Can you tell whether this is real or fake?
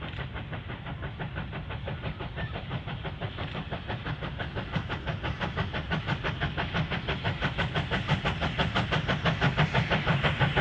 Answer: real